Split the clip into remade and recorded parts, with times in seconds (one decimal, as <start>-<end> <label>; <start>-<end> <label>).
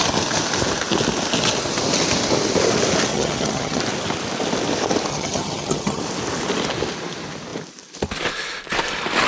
0.0-3.1 recorded; 3.1-3.8 remade; 3.8-5.1 recorded; 5.1-6.0 remade; 6.0-9.3 recorded